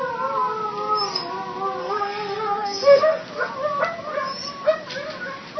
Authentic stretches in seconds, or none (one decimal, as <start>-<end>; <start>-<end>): 0.0-1.8; 3.2-5.6